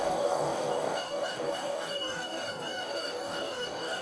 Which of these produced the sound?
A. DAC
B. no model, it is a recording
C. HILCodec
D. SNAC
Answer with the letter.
A